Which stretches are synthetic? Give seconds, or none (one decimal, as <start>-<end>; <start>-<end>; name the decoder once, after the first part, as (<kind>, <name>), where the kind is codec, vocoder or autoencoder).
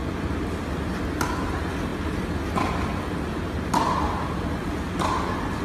none